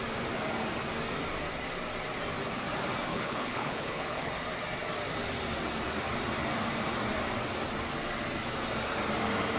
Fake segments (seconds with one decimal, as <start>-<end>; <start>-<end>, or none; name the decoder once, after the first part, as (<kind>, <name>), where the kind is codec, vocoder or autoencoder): 3.1-4.3 (codec, HILCodec)